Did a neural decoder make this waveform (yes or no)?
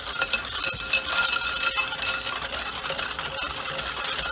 no